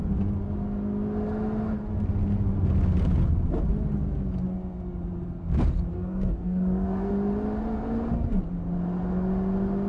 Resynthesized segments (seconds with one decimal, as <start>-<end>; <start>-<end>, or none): 5.9-7.1